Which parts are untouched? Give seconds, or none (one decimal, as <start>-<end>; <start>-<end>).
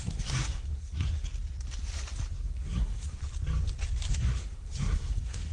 1.3-2.3; 3.2-4.1